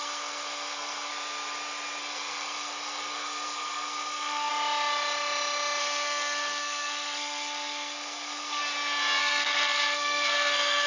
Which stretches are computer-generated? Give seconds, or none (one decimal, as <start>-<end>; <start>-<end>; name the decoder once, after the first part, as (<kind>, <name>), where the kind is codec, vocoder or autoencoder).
0.0-1.1 (codec, SNAC); 2.0-4.5; 5.8-8.6; 9.2-10.9